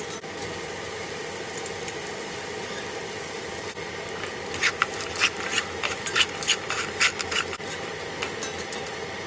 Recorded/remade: recorded